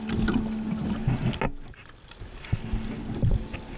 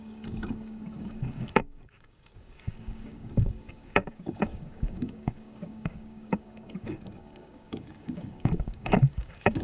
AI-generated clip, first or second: second